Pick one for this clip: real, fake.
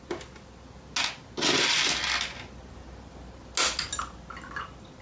real